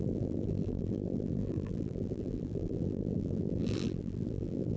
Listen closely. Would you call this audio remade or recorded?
remade